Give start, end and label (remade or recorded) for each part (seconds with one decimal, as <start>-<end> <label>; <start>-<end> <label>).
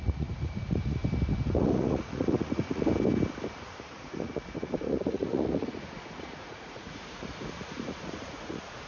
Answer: 0.0-1.0 remade; 1.0-1.5 recorded; 1.5-2.9 remade; 2.9-3.6 recorded; 3.6-8.9 remade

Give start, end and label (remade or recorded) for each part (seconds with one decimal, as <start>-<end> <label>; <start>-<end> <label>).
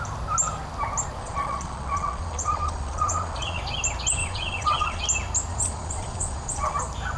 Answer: 0.0-1.2 recorded; 1.2-3.6 remade; 3.6-4.2 recorded; 4.2-5.0 remade; 5.0-5.5 recorded; 5.5-6.8 remade; 6.8-7.2 recorded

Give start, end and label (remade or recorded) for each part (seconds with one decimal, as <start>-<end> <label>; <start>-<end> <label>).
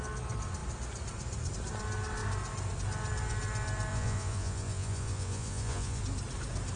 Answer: 0.0-3.9 recorded; 3.9-6.0 remade; 6.0-6.8 recorded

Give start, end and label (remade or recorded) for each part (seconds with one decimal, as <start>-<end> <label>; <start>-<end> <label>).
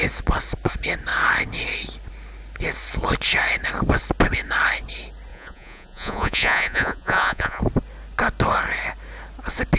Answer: 0.0-5.3 recorded; 5.3-7.6 remade; 7.6-9.8 recorded